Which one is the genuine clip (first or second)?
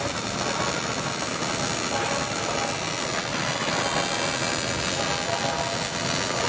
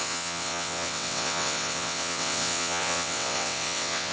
first